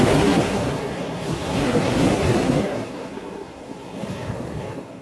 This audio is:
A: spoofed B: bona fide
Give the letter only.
A